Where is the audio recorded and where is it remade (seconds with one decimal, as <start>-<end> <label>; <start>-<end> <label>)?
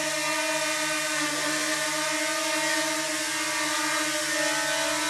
0.0-5.1 recorded